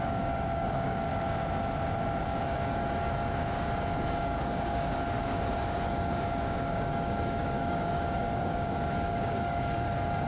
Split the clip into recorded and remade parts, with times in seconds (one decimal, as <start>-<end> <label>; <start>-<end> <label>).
0.0-1.1 remade; 1.1-2.2 recorded; 2.2-10.3 remade